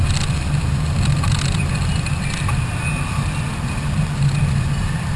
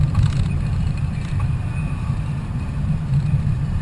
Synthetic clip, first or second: second